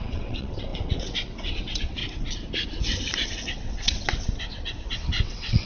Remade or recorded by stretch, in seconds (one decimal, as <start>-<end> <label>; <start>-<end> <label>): 0.0-2.0 remade; 2.0-3.5 recorded; 3.5-5.7 remade